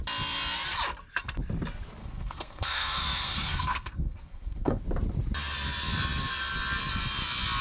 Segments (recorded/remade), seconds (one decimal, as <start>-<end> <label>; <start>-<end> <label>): 0.0-2.0 recorded; 2.0-4.8 remade; 4.8-7.6 recorded